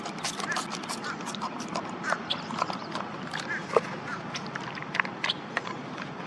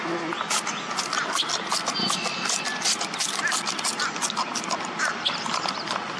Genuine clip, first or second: second